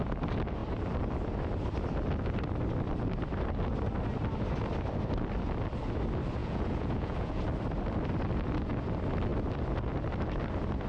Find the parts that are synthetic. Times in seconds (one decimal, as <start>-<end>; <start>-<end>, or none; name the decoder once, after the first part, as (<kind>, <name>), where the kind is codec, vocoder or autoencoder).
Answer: 6.4-7.4 (vocoder, Vocos)